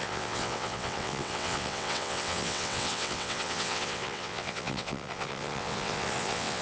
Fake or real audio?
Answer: fake